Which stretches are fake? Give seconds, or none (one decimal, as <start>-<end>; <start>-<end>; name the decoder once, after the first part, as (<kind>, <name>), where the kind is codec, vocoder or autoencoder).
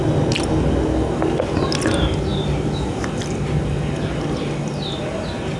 none